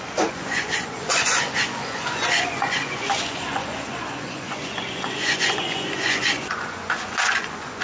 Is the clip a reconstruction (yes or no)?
yes